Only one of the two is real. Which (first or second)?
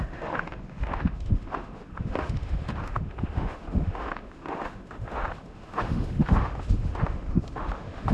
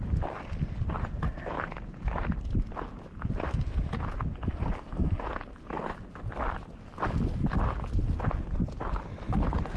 second